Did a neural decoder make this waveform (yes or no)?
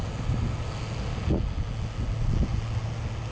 no